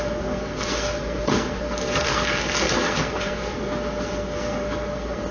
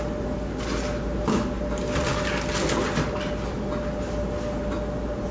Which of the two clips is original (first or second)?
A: second